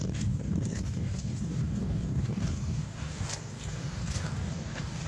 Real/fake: fake